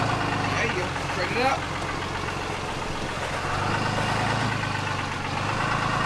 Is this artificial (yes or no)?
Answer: no